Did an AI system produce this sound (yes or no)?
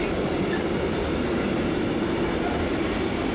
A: no